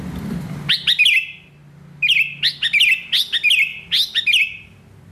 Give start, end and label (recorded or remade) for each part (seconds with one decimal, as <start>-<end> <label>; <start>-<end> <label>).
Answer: 0.0-5.1 recorded